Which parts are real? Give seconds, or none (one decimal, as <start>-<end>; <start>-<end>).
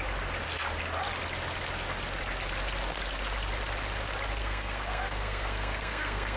0.0-4.4